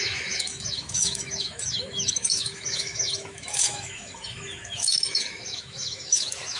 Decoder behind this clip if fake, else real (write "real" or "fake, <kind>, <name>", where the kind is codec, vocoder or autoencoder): fake, autoencoder, DAC-VAE